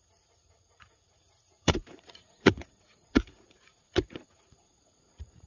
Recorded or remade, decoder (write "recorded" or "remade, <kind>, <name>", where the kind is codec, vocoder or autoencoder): remade, vocoder, Vocos